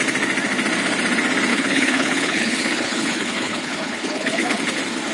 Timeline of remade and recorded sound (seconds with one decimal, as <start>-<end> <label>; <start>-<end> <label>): 0.0-1.5 recorded; 1.5-4.6 remade; 4.6-5.1 recorded